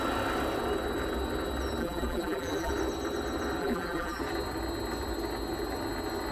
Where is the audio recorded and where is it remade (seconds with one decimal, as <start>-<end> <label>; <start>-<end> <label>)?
0.0-1.8 recorded; 1.8-2.7 remade; 2.7-3.6 recorded; 3.6-4.2 remade; 4.2-6.3 recorded